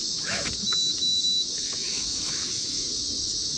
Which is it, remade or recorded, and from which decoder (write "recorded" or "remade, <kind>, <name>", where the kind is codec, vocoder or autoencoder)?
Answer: remade, autoencoder, DAC-VAE